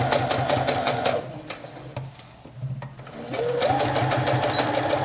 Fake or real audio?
real